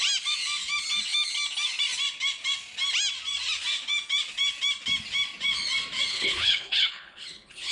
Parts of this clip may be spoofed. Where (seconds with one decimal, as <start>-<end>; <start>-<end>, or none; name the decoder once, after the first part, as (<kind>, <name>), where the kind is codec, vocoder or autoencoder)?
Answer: 6.1-7.7 (codec, HILCodec)